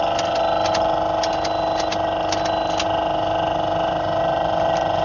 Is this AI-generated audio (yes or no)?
no